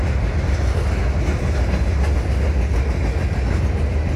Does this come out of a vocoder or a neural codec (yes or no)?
no